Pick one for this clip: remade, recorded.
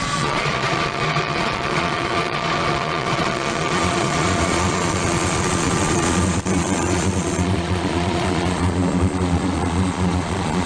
remade